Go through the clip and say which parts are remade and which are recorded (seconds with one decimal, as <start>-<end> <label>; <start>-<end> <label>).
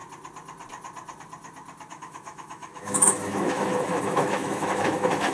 0.0-1.9 recorded; 1.9-5.3 remade